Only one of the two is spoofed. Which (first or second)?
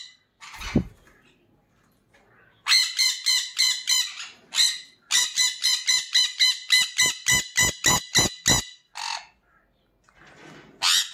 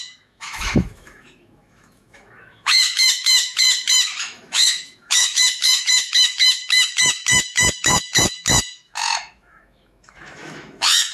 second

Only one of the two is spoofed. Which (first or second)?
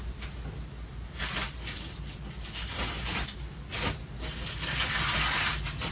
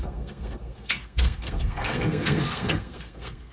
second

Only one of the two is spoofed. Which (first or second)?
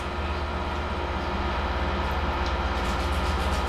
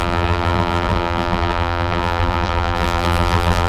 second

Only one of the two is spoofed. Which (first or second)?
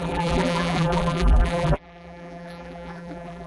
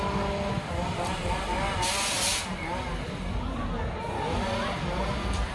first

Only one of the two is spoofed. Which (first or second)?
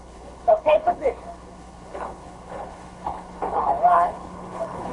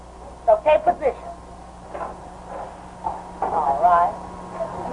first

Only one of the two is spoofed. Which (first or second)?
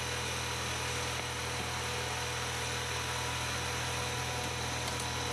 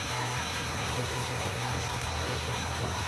second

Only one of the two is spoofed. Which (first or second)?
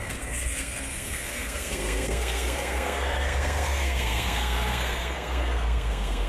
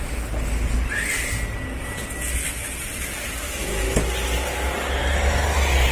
first